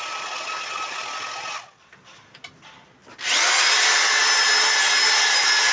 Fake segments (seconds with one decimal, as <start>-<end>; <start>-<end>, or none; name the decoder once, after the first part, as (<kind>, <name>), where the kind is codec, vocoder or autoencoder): none